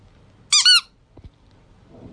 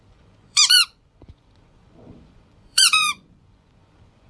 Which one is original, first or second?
first